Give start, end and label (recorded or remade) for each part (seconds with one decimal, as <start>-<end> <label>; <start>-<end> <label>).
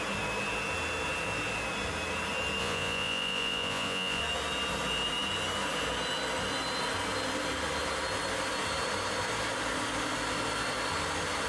0.0-2.6 recorded; 2.6-4.2 remade; 4.2-11.5 recorded